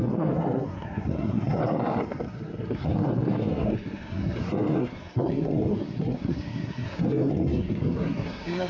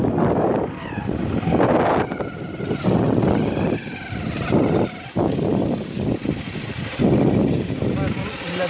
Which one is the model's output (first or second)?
first